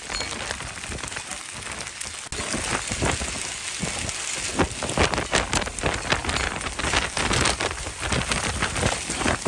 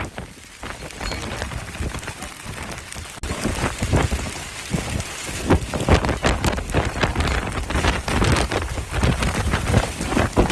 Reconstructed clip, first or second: second